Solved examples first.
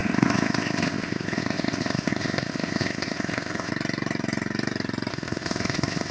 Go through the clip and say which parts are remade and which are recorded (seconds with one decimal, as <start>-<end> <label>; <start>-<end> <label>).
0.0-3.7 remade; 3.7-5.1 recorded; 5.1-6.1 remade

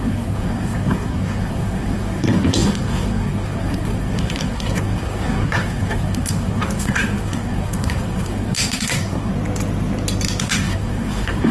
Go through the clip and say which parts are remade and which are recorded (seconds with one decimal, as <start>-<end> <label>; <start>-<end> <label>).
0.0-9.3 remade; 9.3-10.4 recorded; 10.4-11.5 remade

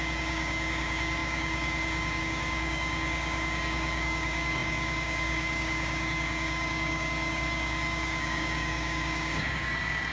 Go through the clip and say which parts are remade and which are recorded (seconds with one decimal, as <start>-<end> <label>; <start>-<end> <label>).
0.0-10.1 remade

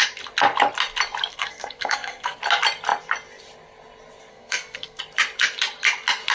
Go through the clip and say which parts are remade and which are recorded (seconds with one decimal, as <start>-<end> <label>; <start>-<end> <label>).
0.0-1.3 recorded; 1.3-2.4 remade; 2.4-4.3 recorded; 4.3-5.0 remade; 5.0-6.3 recorded